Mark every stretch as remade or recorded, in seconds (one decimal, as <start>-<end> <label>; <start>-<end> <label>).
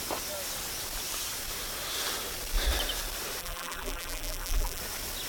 0.0-3.4 recorded; 3.4-4.8 remade; 4.8-5.3 recorded